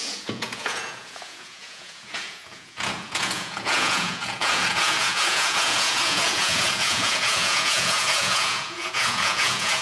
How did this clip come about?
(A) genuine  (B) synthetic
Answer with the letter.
B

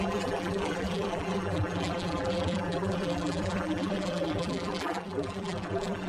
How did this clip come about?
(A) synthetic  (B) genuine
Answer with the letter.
A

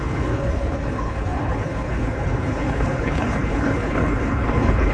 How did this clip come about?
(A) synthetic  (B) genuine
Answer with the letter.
A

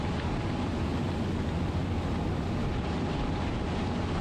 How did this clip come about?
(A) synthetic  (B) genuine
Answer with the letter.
B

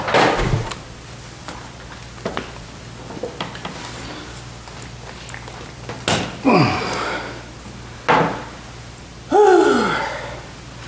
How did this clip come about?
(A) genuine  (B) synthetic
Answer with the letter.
A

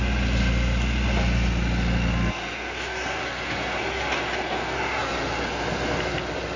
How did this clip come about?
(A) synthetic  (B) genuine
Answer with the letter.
B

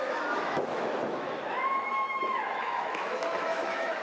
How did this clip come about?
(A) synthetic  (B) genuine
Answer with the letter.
A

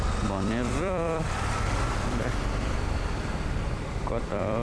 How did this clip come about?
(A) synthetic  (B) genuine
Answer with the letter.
A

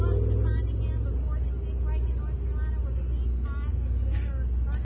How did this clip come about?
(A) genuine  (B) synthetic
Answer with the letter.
A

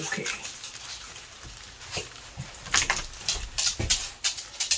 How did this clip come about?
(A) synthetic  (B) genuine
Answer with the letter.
B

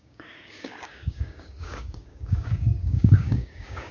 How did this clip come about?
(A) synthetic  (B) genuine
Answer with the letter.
A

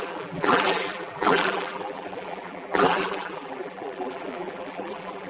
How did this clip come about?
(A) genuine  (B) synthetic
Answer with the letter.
B